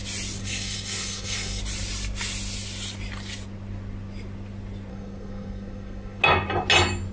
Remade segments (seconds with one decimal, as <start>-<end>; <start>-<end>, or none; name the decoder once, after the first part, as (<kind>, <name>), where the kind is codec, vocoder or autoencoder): 0.4-1.6 (codec, SNAC); 4.9-6.2